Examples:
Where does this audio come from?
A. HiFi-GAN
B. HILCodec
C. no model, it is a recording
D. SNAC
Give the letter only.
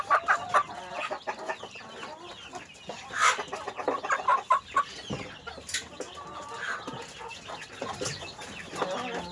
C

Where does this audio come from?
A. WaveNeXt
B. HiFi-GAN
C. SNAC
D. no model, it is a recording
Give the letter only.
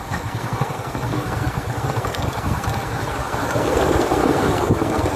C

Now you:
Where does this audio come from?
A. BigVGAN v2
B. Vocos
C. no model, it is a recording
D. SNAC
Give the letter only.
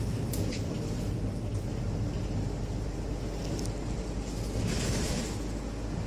C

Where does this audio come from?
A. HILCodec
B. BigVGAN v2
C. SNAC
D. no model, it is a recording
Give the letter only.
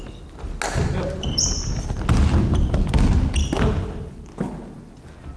D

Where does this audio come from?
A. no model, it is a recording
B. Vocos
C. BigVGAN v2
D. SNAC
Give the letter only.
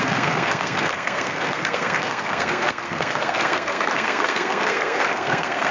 D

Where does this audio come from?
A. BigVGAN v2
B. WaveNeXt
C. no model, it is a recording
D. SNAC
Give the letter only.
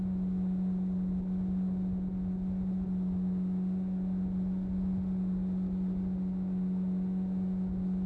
C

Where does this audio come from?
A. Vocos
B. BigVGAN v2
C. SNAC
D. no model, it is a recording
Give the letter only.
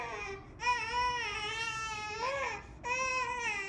D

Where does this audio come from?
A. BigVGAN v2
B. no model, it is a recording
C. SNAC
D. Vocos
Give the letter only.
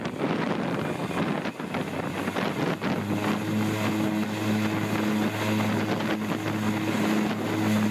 B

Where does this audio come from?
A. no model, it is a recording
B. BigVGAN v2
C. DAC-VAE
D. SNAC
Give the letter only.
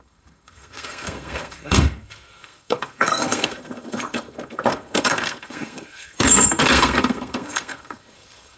D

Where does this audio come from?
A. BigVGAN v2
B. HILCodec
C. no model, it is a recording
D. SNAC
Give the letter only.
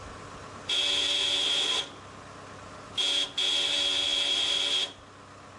C